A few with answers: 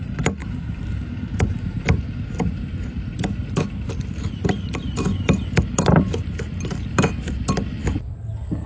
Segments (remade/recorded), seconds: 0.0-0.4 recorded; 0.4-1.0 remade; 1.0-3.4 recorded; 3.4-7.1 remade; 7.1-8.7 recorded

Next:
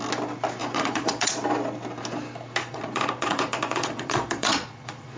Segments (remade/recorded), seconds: 0.0-0.6 recorded; 0.6-1.4 remade; 1.4-2.6 recorded; 2.6-5.2 remade

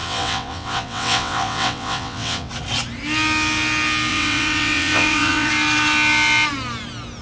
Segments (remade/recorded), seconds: 0.0-2.5 remade; 2.5-4.1 recorded; 4.1-5.5 remade; 5.5-7.2 recorded

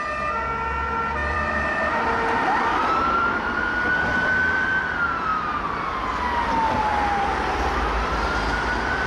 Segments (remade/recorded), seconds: 0.0-1.2 recorded; 1.2-4.8 remade; 4.8-6.9 recorded; 6.9-8.2 remade; 8.2-9.1 recorded

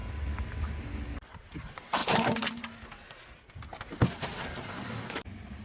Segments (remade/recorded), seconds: 0.0-5.6 recorded